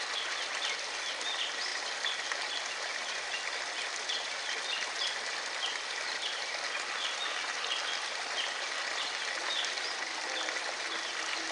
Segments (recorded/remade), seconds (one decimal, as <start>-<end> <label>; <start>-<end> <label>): 0.0-11.5 recorded

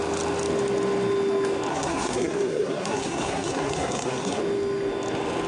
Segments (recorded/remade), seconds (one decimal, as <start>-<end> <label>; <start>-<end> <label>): 0.0-1.7 recorded; 1.7-4.4 remade; 4.4-5.5 recorded

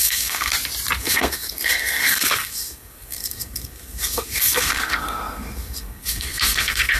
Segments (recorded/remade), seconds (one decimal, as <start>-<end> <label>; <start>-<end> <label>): 0.0-0.5 remade; 0.5-1.0 recorded; 1.0-7.0 remade

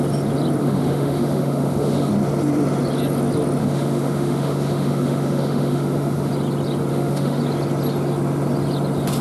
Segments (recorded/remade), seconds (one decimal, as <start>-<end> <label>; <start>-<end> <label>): 0.0-0.6 recorded; 0.6-2.1 remade; 2.1-3.6 recorded; 3.6-6.3 remade; 6.3-6.9 recorded; 6.9-7.4 remade; 7.4-9.2 recorded